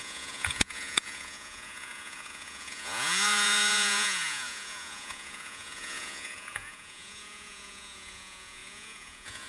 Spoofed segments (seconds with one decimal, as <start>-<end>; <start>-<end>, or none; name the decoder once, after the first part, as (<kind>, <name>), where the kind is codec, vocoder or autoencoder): 0.0-9.5 (vocoder, Vocos)